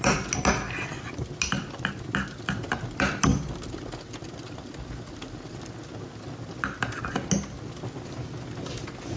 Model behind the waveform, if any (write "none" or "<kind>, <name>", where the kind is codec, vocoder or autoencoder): none